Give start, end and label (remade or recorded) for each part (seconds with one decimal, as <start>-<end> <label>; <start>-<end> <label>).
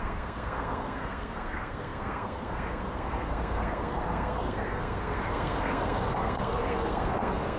0.0-7.6 remade